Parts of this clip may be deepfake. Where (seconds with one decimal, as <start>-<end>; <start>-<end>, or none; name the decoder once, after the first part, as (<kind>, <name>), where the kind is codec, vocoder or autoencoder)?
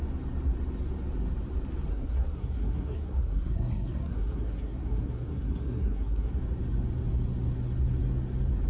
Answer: 1.9-6.4 (codec, SNAC)